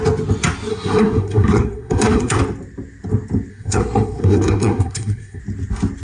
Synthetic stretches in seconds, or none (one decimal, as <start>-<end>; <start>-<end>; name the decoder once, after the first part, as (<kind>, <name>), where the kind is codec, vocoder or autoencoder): 0.7-2.4 (codec, SNAC); 3.5-5.4